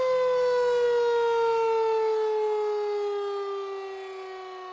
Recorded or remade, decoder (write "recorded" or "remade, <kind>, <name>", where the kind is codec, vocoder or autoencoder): recorded